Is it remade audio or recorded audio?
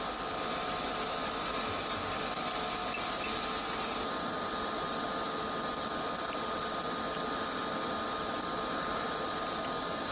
recorded